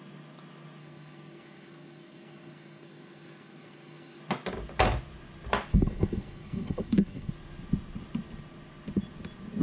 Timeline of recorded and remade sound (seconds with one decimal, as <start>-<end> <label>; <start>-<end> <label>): 0.0-0.8 recorded; 0.8-4.2 remade; 4.2-5.7 recorded; 5.7-7.3 remade; 7.3-9.6 recorded

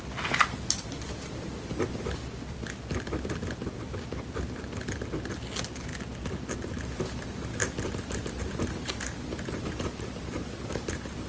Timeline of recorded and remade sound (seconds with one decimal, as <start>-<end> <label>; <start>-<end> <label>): 0.0-11.3 recorded

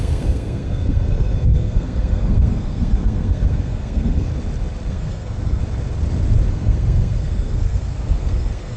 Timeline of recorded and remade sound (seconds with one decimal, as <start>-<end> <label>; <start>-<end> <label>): 0.0-4.3 remade; 4.3-4.9 recorded; 4.9-5.6 remade; 5.6-6.5 recorded; 6.5-8.8 remade

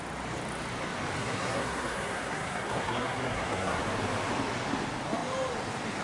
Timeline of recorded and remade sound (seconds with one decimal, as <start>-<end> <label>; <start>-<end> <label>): 0.0-1.2 recorded; 1.2-3.8 remade; 3.8-6.0 recorded

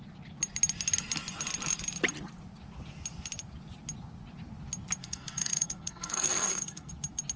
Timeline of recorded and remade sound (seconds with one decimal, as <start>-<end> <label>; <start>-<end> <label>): 0.0-5.0 recorded; 5.0-6.9 remade; 6.9-7.4 recorded

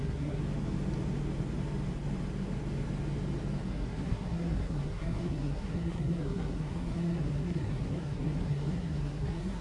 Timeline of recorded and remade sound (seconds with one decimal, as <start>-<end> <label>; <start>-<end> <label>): 0.0-0.4 remade; 0.4-3.7 recorded; 3.7-9.6 remade

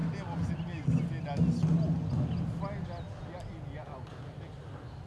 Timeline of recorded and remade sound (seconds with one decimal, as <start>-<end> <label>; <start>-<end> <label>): 0.0-5.1 recorded